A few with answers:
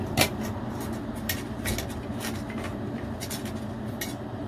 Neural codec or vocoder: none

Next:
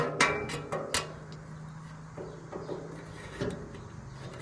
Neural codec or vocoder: none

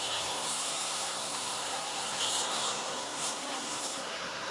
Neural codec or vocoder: codec, SNAC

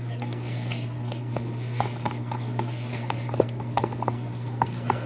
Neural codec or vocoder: codec, SNAC